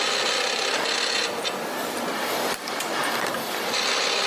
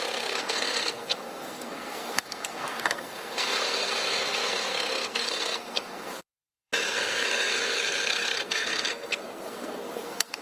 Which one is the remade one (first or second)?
second